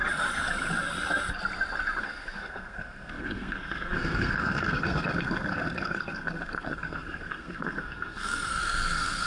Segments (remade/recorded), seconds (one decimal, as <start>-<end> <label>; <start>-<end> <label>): 0.0-2.0 recorded; 2.0-9.3 remade